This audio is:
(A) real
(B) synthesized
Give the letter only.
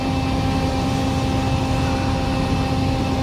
A